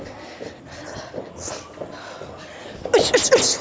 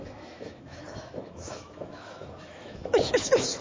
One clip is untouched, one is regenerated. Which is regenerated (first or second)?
second